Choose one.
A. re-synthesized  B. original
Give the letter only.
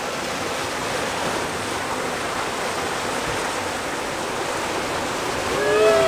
B